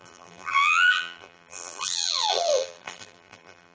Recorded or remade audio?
remade